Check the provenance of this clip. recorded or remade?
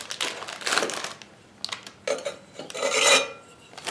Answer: recorded